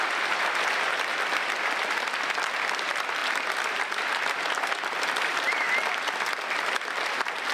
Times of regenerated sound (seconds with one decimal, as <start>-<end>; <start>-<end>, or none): none